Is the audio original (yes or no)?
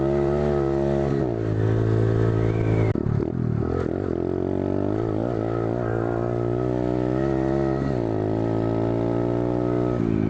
yes